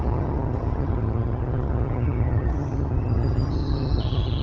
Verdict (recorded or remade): remade